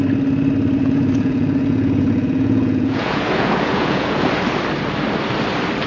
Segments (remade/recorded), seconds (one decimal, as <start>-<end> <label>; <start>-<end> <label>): 0.0-0.8 recorded; 0.8-4.3 remade; 4.3-5.9 recorded